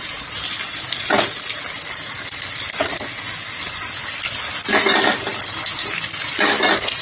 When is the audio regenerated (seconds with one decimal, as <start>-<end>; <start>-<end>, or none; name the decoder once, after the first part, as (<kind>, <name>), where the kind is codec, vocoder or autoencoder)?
none